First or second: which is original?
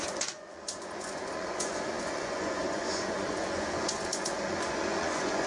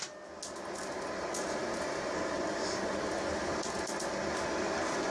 second